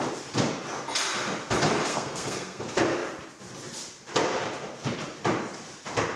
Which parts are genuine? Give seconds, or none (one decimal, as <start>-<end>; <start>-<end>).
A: 0.0-1.9; 2.6-6.2